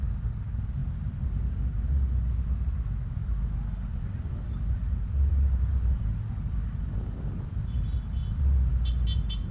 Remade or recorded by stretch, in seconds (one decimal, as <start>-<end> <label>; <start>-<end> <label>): 0.0-9.5 recorded